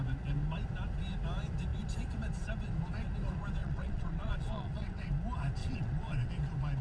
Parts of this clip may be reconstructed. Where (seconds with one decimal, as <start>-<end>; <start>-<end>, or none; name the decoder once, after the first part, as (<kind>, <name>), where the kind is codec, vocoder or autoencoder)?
3.6-5.1 (vocoder, WaveNeXt); 5.6-6.3